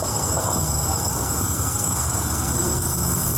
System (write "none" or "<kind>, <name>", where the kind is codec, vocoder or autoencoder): codec, SNAC